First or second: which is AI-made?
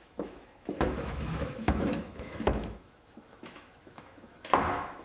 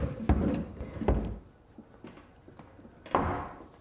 first